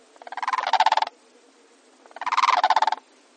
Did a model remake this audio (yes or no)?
no